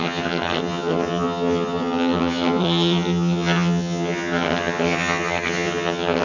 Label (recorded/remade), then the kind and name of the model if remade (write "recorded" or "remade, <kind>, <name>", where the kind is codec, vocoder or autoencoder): remade, vocoder, HiFi-GAN